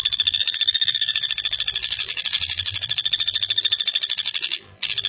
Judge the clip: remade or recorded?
remade